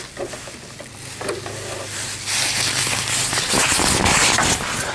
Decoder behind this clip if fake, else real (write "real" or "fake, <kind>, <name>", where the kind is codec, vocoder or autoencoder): real